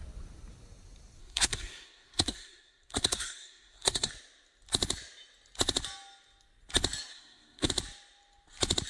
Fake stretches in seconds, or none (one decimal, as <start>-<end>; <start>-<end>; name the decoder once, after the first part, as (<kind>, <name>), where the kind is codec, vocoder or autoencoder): 1.2-4.1 (codec, SNAC); 7.1-7.7